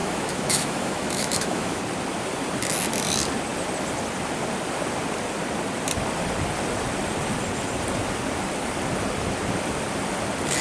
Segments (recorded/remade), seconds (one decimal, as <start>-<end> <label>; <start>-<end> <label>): 0.0-1.8 remade; 1.8-10.6 recorded